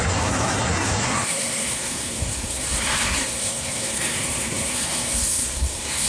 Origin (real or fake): fake